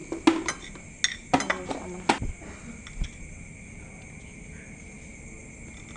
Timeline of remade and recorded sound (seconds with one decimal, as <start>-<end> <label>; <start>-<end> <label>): 0.0-6.0 recorded